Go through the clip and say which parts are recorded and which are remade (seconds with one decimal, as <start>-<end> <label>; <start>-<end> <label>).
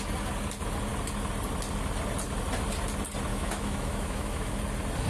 0.0-3.3 recorded; 3.3-4.5 remade; 4.5-5.1 recorded